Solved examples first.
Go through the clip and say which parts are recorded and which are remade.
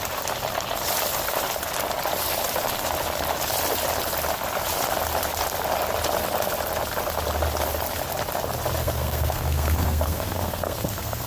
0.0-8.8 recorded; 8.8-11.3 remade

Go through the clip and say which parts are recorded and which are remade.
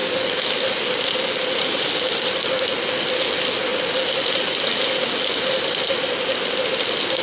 0.0-7.2 recorded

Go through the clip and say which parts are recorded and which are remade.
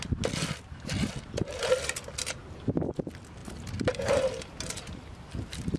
0.0-5.8 recorded